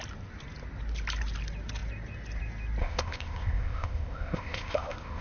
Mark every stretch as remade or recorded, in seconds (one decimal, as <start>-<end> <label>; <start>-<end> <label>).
0.0-2.8 recorded; 2.8-5.2 remade